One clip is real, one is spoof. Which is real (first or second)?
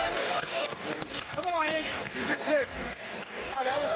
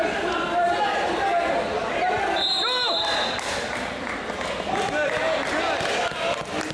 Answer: second